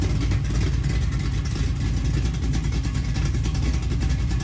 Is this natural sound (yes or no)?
yes